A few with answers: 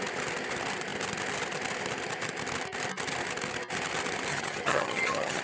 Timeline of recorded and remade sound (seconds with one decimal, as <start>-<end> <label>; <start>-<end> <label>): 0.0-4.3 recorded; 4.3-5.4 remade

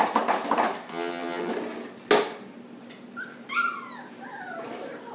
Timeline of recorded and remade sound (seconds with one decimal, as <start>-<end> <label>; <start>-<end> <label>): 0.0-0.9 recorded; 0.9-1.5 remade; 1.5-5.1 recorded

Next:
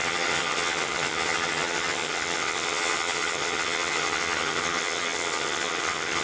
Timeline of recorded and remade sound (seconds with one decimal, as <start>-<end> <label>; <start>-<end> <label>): 0.0-6.2 remade

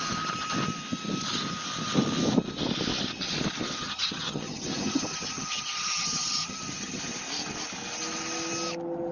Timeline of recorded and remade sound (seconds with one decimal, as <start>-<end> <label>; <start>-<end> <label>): 0.0-3.8 recorded; 3.8-7.0 remade; 7.0-9.1 recorded

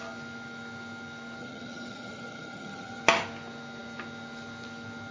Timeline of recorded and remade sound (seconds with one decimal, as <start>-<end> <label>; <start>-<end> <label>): 0.0-1.4 recorded; 1.4-3.0 remade; 3.0-5.1 recorded

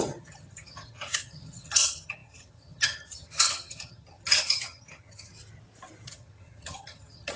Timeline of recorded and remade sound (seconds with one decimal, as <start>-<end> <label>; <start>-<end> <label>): 0.0-5.3 remade; 5.3-6.1 recorded; 6.1-7.4 remade